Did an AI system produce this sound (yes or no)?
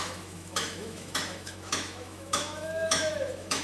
yes